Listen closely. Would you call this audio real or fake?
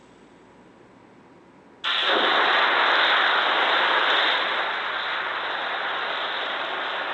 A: real